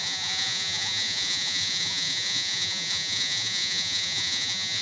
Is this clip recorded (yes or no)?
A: no